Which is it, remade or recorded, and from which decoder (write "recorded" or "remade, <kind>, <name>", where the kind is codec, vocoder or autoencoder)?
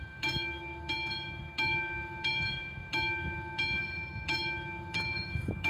remade, autoencoder, DAC-VAE